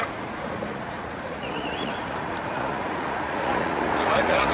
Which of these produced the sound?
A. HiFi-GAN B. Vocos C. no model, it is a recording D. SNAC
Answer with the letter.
B